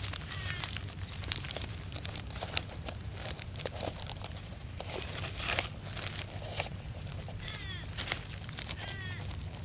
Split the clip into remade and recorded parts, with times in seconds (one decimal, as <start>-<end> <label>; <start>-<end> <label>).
0.0-0.8 recorded; 0.8-4.8 remade; 4.8-6.5 recorded; 6.5-7.6 remade; 7.6-9.6 recorded